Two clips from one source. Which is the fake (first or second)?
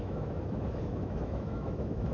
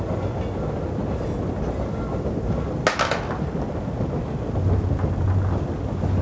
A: first